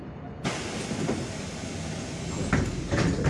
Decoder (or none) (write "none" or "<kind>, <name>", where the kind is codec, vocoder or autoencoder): none